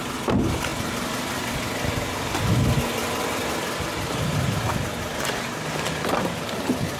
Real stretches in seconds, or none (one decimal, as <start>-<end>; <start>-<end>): 0.0-0.7; 1.5-3.0; 4.8-7.0